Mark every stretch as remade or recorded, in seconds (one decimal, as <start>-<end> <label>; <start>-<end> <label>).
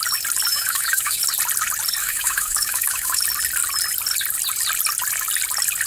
0.0-0.5 recorded; 0.5-1.2 remade; 1.2-2.0 recorded; 2.0-3.2 remade; 3.2-5.9 recorded